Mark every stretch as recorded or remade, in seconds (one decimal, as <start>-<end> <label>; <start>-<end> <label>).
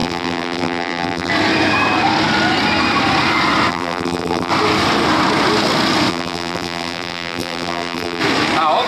0.0-1.3 remade; 1.3-3.7 recorded; 3.7-4.5 remade; 4.5-6.1 recorded; 6.1-8.2 remade; 8.2-8.9 recorded